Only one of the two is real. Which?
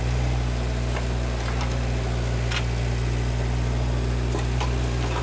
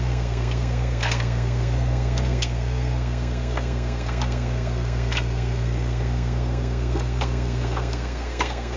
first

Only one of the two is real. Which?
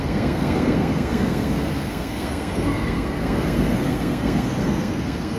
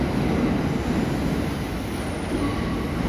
second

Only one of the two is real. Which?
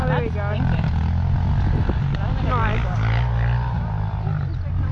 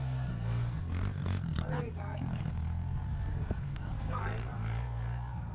first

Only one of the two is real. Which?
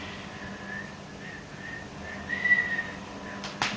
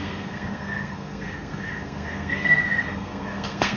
first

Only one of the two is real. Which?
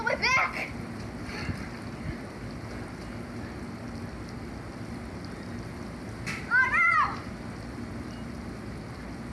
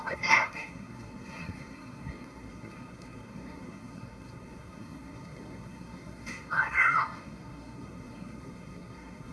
first